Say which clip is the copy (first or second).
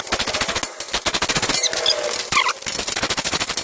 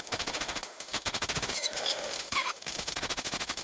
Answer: second